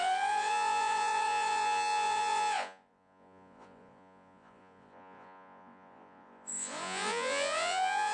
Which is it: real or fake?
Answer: fake